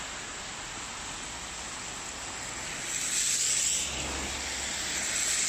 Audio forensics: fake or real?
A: real